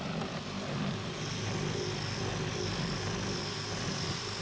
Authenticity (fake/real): real